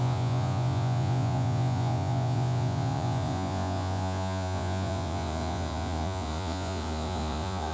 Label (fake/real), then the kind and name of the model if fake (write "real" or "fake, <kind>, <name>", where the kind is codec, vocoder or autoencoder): fake, vocoder, Vocos